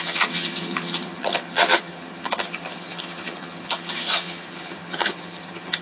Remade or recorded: remade